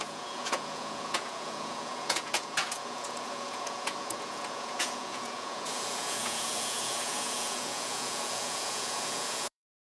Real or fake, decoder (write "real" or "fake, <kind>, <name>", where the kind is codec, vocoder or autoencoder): fake, vocoder, Vocos